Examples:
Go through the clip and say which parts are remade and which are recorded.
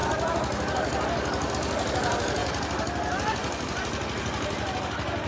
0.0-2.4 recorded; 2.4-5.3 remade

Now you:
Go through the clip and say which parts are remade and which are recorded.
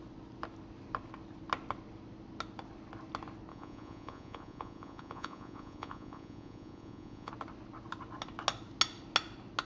0.0-3.5 recorded; 3.5-7.3 remade; 7.3-9.6 recorded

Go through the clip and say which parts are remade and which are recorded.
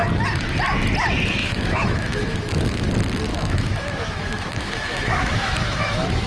0.0-1.4 recorded; 1.4-2.9 remade; 2.9-3.3 recorded; 3.3-6.3 remade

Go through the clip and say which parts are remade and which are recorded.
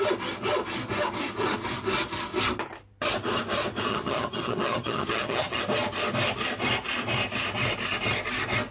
0.0-3.9 recorded; 3.9-5.6 remade; 5.6-8.7 recorded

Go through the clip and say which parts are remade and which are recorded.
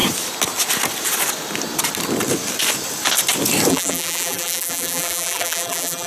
0.0-3.7 recorded; 3.7-6.1 remade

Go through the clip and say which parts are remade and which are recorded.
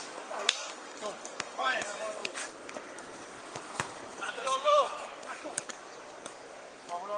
0.0-7.2 remade